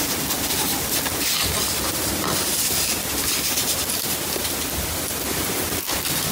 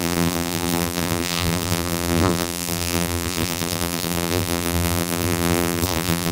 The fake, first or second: second